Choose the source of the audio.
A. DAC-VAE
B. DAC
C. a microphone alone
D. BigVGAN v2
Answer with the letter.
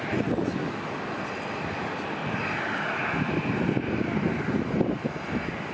C